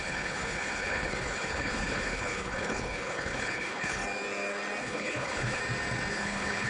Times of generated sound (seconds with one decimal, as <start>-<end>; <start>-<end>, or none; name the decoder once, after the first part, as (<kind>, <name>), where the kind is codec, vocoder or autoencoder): 0.0-4.0 (codec, HILCodec); 4.8-5.6; 6.1-6.7